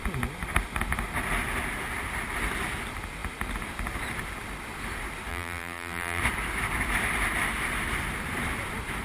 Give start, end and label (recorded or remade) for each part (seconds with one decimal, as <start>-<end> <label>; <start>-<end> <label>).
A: 0.0-5.3 recorded; 5.3-6.2 remade; 6.2-9.0 recorded